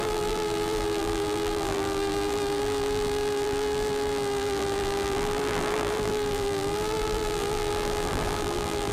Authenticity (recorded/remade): remade